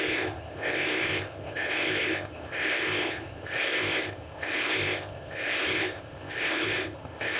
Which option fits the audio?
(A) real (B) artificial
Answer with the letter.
B